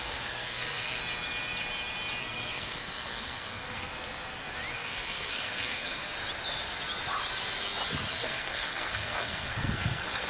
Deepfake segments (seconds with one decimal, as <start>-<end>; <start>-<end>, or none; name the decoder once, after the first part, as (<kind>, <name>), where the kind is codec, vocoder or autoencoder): 0.0-1.0 (codec, SNAC); 2.2-3.9; 4.7-6.0; 8.1-10.3